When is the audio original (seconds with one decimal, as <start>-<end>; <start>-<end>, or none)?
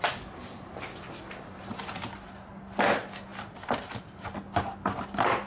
0.0-5.5